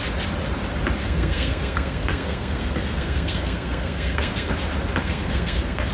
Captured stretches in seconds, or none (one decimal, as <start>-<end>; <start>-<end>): 0.0-1.0; 4.5-5.0